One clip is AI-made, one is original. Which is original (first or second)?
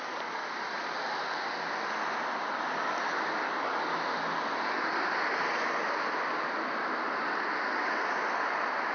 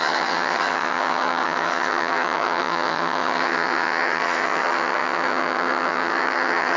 first